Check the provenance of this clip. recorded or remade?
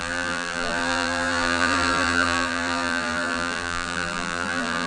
remade